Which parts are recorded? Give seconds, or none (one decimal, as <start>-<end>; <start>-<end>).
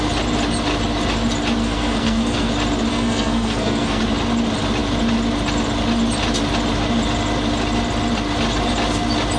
0.0-1.6; 2.5-2.9; 4.0-9.4